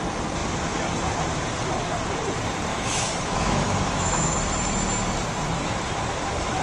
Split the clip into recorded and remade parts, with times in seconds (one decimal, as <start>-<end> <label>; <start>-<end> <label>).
0.0-2.7 recorded; 2.7-4.4 remade; 4.4-6.6 recorded